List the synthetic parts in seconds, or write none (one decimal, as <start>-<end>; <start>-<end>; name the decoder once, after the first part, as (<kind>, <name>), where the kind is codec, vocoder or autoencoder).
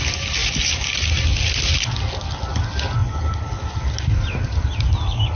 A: none